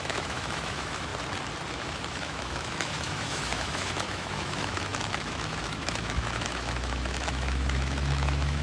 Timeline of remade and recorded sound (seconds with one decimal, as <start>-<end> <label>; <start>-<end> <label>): 0.0-1.1 remade; 1.1-1.7 recorded; 1.7-8.6 remade

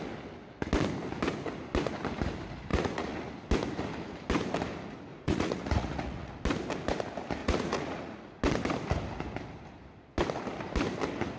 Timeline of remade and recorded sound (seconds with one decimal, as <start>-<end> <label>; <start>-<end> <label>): 0.0-2.7 recorded; 2.7-3.3 remade; 3.3-5.1 recorded; 5.1-6.4 remade; 6.4-7.4 recorded; 7.4-8.2 remade; 8.2-11.4 recorded

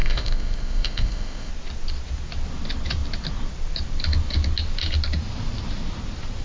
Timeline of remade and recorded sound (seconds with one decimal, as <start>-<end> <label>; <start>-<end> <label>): 0.0-1.5 remade; 1.5-6.4 recorded

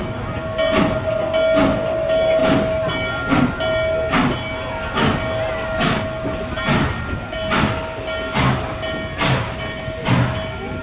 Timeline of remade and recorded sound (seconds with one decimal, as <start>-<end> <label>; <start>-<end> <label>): 0.0-10.8 recorded

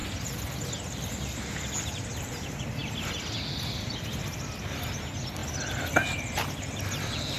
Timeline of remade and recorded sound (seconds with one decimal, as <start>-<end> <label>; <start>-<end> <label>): 0.0-7.4 recorded